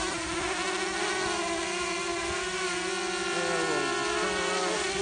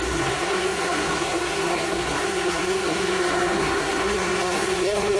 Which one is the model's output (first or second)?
second